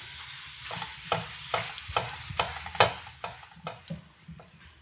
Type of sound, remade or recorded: recorded